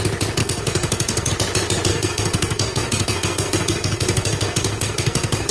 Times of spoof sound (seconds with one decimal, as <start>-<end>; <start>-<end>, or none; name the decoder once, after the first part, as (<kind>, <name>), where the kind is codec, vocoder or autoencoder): 0.4-1.3 (codec, SNAC); 1.9-5.5